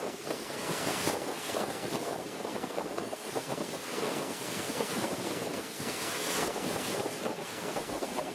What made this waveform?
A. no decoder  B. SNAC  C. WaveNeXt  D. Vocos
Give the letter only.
B